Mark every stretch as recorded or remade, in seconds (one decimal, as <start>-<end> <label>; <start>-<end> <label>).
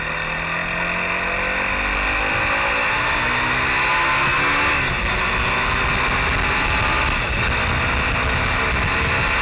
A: 0.0-9.4 recorded